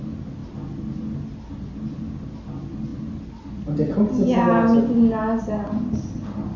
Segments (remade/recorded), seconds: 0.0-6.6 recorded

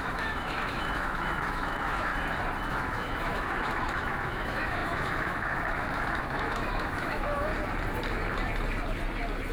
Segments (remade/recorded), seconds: 0.0-2.1 remade; 2.1-2.7 recorded; 2.7-7.5 remade; 7.5-9.5 recorded